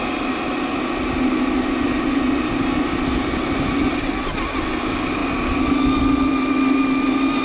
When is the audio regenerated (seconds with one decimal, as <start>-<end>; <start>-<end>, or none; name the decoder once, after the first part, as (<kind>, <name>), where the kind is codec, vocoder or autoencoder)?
none